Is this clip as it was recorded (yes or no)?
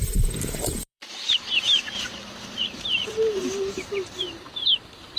no